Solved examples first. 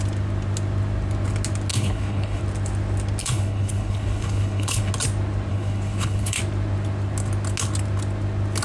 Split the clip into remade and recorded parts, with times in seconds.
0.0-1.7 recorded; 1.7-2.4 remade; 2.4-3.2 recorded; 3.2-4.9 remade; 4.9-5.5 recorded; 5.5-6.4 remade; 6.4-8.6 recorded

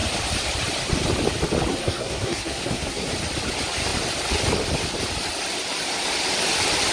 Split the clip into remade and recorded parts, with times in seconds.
0.0-1.7 recorded; 1.7-3.1 remade; 3.1-6.9 recorded

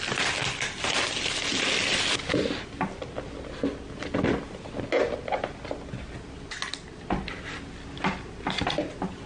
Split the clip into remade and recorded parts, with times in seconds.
0.0-9.3 recorded

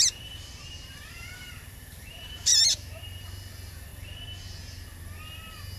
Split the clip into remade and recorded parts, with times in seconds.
0.0-3.9 remade; 3.9-5.8 recorded

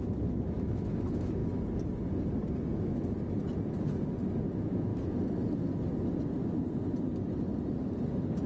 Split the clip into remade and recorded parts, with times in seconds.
0.0-1.4 remade; 1.4-4.5 recorded; 4.5-4.9 remade; 4.9-8.5 recorded

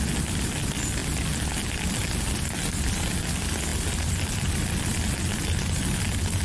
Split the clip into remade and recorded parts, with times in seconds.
0.0-6.4 recorded